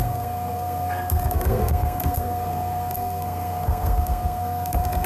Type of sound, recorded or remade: remade